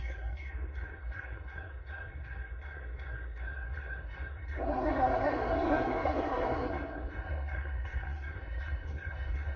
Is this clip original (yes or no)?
no